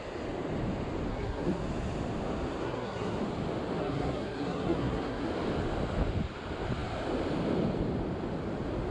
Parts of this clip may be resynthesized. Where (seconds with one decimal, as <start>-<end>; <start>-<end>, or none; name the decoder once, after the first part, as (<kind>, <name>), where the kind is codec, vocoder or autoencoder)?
1.1-1.6 (codec, SNAC); 2.6-3.2; 3.8-5.3